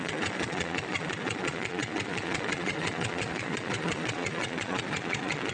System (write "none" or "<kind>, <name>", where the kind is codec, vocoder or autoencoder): vocoder, Vocos